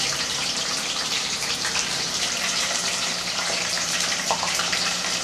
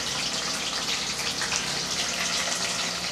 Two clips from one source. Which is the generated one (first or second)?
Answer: first